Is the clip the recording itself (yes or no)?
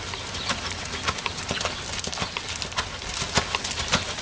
yes